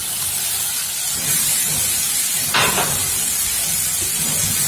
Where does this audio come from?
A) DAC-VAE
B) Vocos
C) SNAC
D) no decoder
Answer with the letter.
D